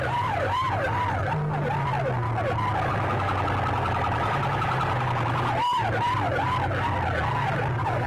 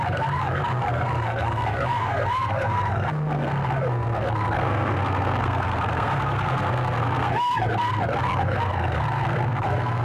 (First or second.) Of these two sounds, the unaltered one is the first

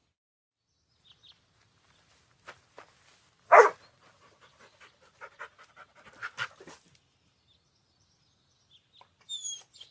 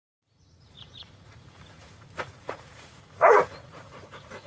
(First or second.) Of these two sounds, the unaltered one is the first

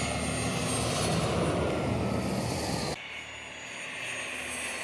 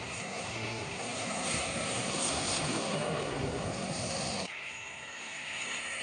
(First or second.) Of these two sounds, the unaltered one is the first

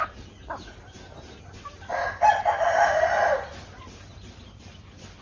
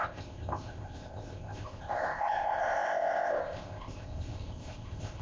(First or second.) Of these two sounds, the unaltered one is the first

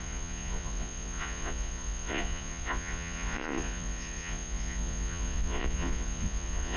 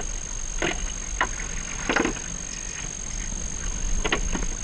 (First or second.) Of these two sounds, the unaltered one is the second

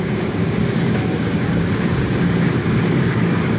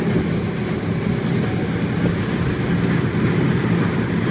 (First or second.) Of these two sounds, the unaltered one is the second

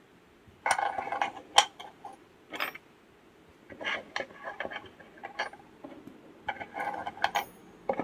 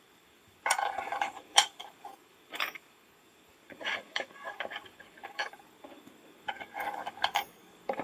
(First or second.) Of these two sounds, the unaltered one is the first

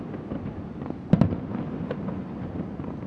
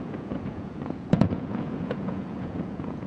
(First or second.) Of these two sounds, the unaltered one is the first